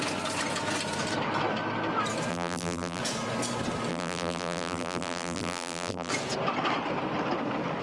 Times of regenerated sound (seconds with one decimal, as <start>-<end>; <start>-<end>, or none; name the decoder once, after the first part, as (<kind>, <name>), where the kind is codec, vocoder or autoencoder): 2.3-3.0 (vocoder, BigVGAN v2); 3.9-6.1